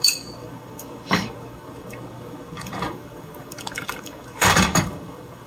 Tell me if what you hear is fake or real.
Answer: fake